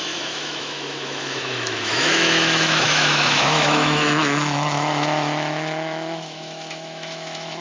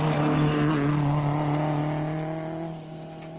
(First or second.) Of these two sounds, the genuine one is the second